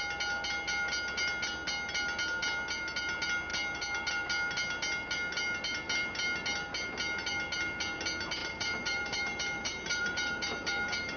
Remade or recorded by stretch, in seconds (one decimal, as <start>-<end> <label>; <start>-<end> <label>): 0.0-8.4 recorded; 8.4-11.2 remade

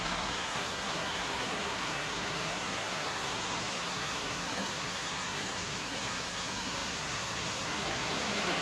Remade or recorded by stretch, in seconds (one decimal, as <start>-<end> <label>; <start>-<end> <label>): 0.0-8.6 remade

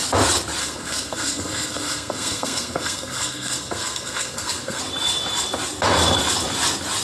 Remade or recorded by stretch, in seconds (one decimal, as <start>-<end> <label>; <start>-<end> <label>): 0.0-0.6 recorded; 0.6-4.8 remade; 4.8-7.0 recorded

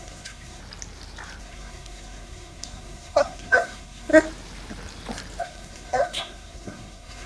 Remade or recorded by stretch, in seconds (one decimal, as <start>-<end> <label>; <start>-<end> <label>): 0.0-0.6 remade; 0.6-1.4 recorded; 1.4-4.1 remade; 4.1-5.4 recorded; 5.4-7.3 remade

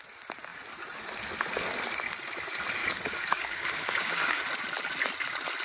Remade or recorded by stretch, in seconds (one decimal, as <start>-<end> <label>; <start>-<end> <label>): 0.0-2.8 recorded; 2.8-4.4 remade; 4.4-5.6 recorded

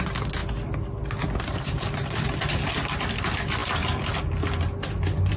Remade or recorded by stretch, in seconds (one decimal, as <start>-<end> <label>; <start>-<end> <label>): 0.0-3.6 recorded; 3.6-4.2 remade; 4.2-5.4 recorded

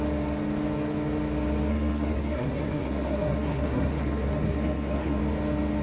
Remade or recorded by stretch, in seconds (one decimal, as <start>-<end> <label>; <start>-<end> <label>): 0.0-1.7 recorded; 1.7-5.2 remade; 5.2-5.8 recorded

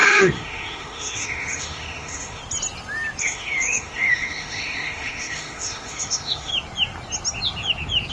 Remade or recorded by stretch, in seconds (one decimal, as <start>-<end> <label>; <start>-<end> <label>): 0.0-2.4 remade; 2.4-3.2 recorded; 3.2-6.5 remade; 6.5-8.1 recorded